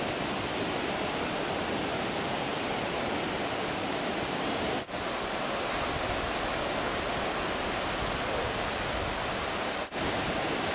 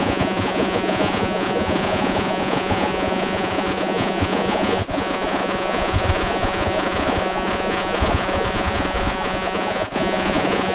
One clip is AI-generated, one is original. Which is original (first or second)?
first